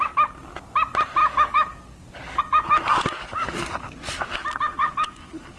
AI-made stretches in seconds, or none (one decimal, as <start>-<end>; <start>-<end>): 1.2-2.4; 3.2-4.2; 4.8-5.6